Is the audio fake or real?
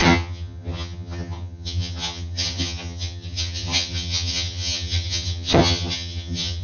fake